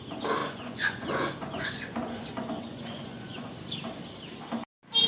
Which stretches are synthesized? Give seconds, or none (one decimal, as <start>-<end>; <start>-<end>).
0.4-3.5